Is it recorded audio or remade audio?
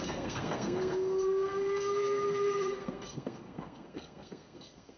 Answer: remade